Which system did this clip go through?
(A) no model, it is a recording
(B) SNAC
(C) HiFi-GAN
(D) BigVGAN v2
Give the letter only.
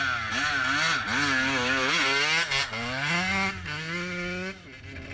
A